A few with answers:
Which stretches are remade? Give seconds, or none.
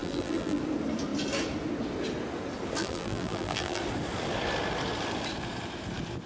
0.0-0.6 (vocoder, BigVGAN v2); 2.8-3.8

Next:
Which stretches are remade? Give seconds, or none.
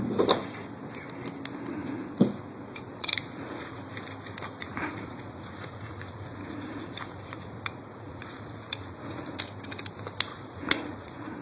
2.9-3.8 (vocoder, Vocos); 4.6-9.4; 10.3-11.4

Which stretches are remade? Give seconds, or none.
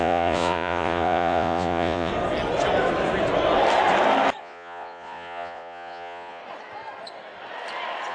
0.0-2.1 (vocoder, Vocos); 4.4-6.4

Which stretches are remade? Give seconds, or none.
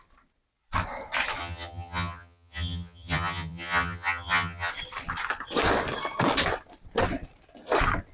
1.4-4.7 (vocoder, HiFi-GAN)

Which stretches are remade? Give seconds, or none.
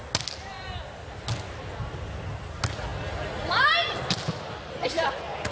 none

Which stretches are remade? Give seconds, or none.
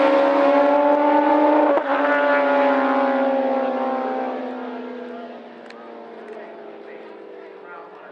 none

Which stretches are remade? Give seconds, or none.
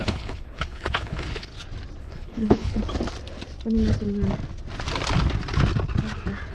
0.0-1.5 (codec, HILCodec); 2.0-2.8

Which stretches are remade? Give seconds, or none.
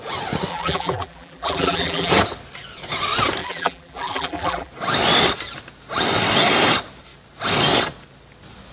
0.5-2.1 (vocoder, BigVGAN v2); 3.4-4.7